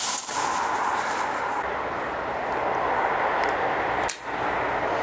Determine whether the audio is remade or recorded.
recorded